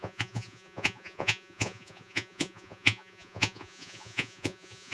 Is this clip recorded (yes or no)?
no